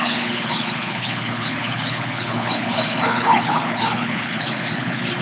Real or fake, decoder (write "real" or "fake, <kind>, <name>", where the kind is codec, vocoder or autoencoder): fake, codec, HILCodec